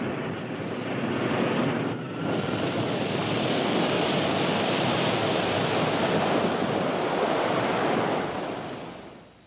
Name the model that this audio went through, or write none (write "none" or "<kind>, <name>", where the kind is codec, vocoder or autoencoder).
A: none